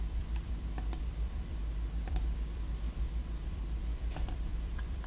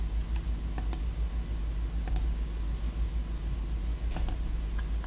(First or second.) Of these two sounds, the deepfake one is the first